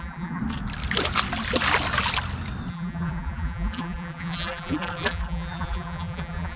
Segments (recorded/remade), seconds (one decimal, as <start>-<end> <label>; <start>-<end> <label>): 0.0-0.4 remade; 0.4-2.7 recorded; 2.7-6.6 remade